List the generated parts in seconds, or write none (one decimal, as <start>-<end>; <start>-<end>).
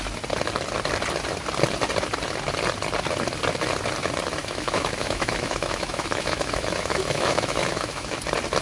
4.4-8.2